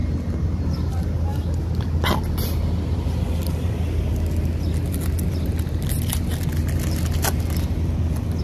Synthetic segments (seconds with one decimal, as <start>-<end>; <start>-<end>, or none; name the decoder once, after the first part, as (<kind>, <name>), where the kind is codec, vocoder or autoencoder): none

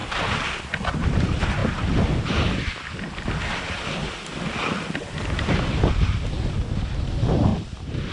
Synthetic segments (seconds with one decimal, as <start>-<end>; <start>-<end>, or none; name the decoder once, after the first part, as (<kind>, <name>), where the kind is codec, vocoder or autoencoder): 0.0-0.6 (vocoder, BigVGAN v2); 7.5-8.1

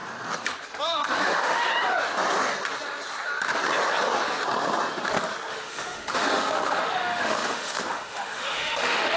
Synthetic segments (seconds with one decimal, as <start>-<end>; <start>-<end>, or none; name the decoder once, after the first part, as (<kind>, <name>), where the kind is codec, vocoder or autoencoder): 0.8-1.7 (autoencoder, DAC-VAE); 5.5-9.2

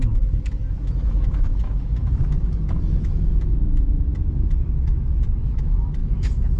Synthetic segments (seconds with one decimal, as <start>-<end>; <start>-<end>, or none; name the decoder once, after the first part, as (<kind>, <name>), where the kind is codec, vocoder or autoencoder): 0.0-6.6 (autoencoder, DAC-VAE)

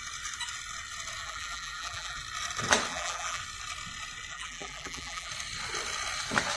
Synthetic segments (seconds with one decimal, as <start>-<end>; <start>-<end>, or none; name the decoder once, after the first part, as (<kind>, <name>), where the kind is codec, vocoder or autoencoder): 1.2-2.2 (vocoder, BigVGAN v2); 2.9-3.4; 4.3-5.3